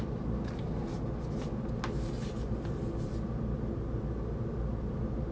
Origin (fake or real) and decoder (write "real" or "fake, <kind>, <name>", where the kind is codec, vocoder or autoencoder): real